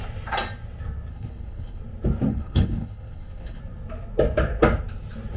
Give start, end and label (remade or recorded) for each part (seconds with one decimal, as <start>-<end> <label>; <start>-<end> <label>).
0.0-1.1 recorded; 1.1-1.8 remade; 1.8-2.3 recorded; 2.3-3.6 remade; 3.6-5.4 recorded

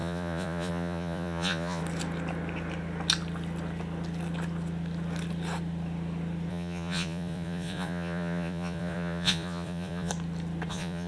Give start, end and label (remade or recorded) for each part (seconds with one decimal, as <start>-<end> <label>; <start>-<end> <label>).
0.0-1.8 remade; 1.8-6.5 recorded; 6.5-10.1 remade; 10.1-10.7 recorded; 10.7-11.1 remade

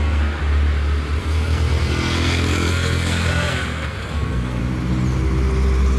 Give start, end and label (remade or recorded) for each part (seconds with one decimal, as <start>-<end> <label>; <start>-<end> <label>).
0.0-0.4 remade; 0.4-1.2 recorded; 1.2-4.6 remade; 4.6-6.0 recorded